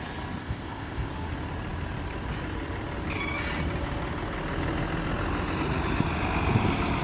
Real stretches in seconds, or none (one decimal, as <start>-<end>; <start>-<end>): 0.0-0.4; 1.1-7.0